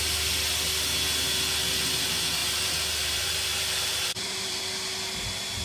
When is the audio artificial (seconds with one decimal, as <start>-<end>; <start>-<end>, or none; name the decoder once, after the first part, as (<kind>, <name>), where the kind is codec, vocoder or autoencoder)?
2.4-4.6 (vocoder, BigVGAN v2)